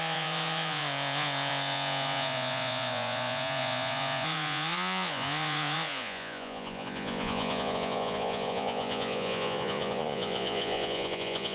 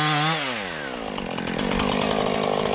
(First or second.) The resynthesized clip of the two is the first